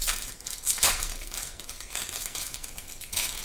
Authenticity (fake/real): fake